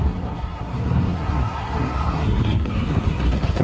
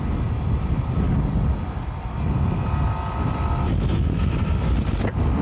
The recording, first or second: second